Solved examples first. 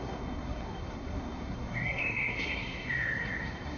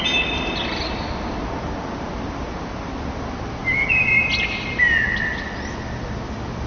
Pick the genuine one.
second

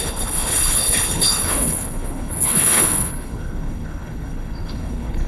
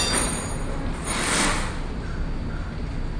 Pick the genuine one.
second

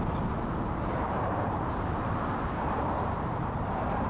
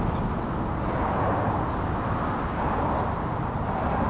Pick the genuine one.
second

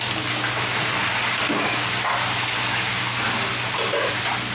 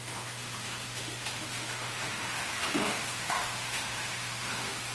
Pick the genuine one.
first